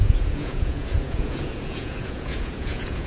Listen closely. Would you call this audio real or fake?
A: fake